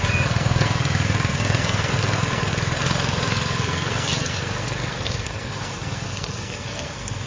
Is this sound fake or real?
fake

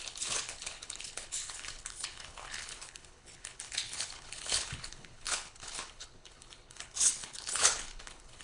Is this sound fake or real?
fake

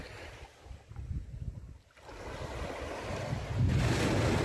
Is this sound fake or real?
real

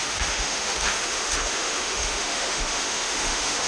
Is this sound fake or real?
fake